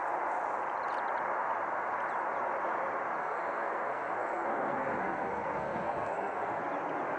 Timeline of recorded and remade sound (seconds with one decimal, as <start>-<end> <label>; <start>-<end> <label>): 0.0-3.2 recorded; 3.2-6.6 remade; 6.6-7.2 recorded